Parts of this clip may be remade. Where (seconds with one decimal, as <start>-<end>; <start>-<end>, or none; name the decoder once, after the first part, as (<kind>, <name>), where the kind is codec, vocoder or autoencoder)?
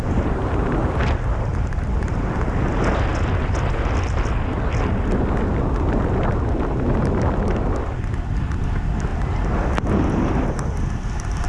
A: 1.5-2.3 (vocoder, BigVGAN v2)